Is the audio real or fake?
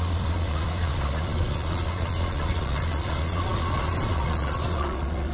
fake